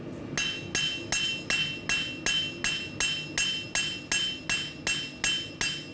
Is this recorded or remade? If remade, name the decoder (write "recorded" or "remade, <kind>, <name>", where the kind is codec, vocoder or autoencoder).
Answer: recorded